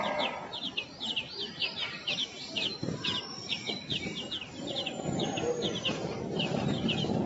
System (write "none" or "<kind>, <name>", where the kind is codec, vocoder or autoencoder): vocoder, BigVGAN v2